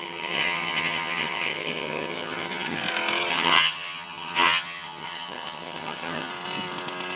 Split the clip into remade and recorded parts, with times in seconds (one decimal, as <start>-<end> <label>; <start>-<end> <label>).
0.0-2.8 remade; 2.8-3.3 recorded; 3.3-6.3 remade; 6.3-7.2 recorded